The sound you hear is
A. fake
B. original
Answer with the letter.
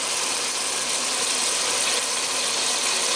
B